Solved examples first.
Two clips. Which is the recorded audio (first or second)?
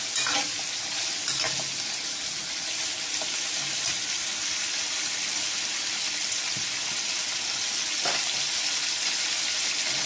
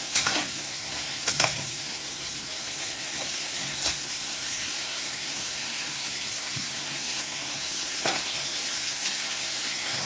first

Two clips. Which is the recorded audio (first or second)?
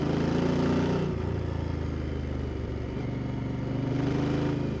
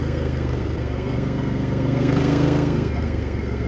first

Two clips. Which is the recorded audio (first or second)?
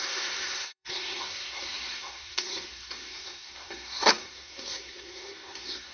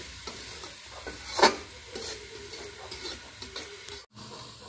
second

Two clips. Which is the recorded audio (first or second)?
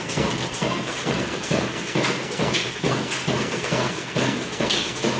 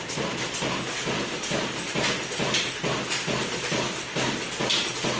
second